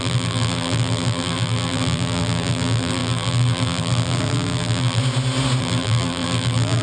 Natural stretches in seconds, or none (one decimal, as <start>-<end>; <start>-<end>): 5.0-5.6